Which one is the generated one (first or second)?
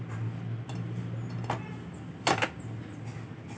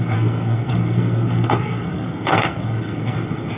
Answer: second